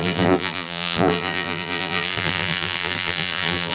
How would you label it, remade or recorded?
remade